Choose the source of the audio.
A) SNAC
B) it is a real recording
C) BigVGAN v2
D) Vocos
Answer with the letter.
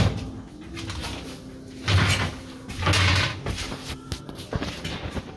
B